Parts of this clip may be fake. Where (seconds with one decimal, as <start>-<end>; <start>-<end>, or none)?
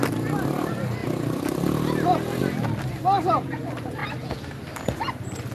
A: none